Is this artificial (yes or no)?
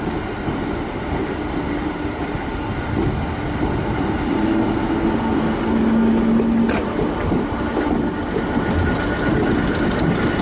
no